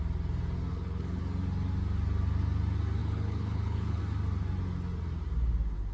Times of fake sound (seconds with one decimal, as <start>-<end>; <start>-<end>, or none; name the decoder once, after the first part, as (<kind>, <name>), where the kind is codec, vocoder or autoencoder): 0.7-1.2 (codec, HILCodec); 3.0-4.0